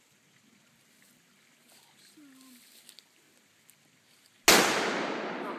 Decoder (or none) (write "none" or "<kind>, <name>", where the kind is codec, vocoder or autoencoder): none